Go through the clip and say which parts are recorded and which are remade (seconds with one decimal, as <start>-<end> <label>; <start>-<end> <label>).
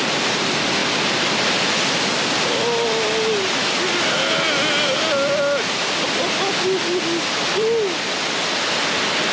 0.0-9.3 recorded